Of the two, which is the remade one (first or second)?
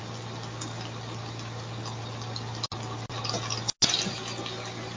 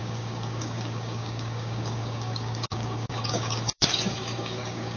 second